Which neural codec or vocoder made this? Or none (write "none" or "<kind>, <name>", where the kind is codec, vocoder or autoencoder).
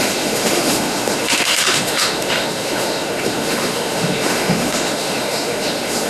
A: autoencoder, DAC-VAE